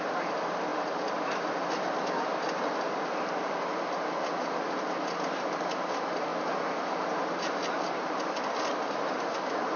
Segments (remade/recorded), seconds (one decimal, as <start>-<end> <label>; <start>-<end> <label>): 0.0-9.8 recorded